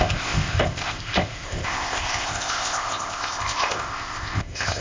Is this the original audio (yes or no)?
no